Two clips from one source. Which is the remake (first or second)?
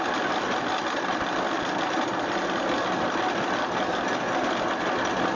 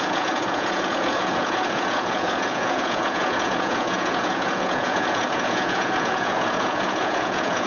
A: second